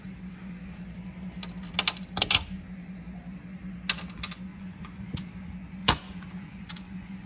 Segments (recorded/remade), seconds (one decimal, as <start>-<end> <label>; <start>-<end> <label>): 0.0-4.5 recorded; 4.5-5.2 remade; 5.2-5.8 recorded; 5.8-7.3 remade